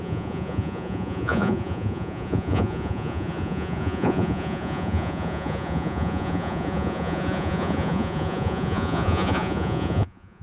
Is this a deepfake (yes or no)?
yes